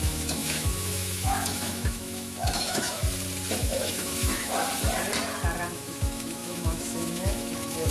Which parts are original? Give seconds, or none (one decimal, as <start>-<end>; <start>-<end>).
3.0-3.6; 4.5-5.7